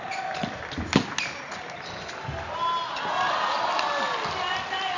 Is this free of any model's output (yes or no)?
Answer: yes